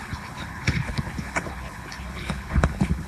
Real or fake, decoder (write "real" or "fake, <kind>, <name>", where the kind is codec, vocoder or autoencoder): fake, codec, HILCodec